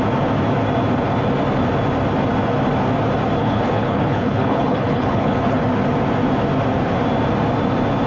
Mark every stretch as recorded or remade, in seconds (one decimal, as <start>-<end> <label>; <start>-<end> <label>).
0.0-3.4 recorded; 3.4-5.6 remade; 5.6-8.1 recorded